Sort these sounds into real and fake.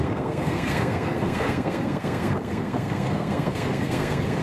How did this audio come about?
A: fake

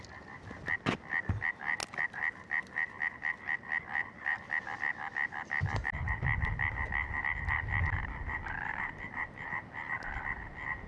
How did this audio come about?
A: real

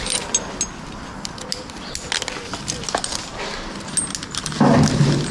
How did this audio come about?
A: real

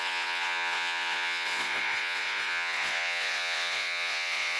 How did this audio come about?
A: fake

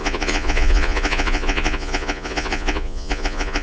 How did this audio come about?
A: fake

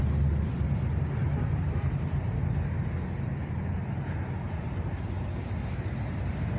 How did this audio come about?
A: real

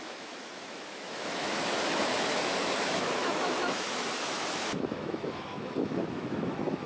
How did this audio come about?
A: fake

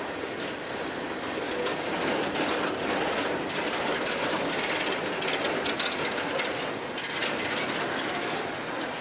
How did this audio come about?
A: real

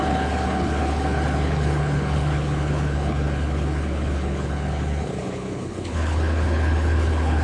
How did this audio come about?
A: fake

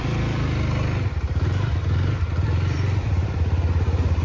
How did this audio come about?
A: fake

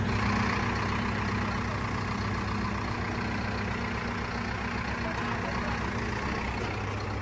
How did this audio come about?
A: real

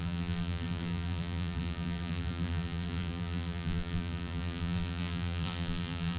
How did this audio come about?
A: fake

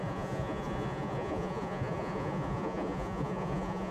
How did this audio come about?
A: fake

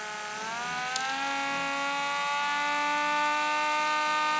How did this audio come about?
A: real